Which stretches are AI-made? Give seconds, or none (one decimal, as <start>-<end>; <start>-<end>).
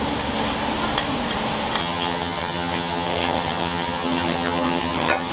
1.8-5.3